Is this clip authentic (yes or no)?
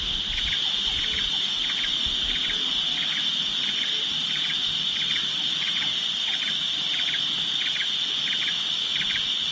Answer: yes